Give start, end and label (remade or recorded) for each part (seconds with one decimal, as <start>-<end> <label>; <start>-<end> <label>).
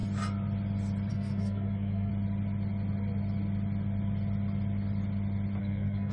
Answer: 0.0-1.1 recorded; 1.1-2.1 remade; 2.1-5.6 recorded; 5.6-6.1 remade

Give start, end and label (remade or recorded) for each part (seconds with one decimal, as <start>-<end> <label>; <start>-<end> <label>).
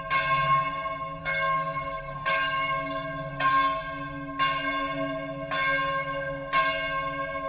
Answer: 0.0-1.2 recorded; 1.2-3.5 remade; 3.5-7.5 recorded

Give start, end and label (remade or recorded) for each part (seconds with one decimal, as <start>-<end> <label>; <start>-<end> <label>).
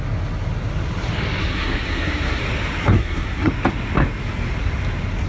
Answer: 0.0-1.4 recorded; 1.4-2.4 remade; 2.4-2.8 recorded; 2.8-3.5 remade; 3.5-5.3 recorded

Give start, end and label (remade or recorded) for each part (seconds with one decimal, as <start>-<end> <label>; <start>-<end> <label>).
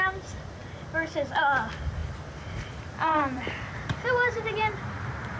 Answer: 0.0-2.0 recorded; 2.0-5.4 remade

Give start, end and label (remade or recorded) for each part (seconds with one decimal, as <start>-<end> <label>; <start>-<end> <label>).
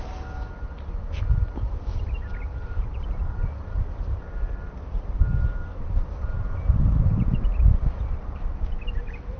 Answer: 0.0-2.5 recorded; 2.5-3.5 remade; 3.5-9.4 recorded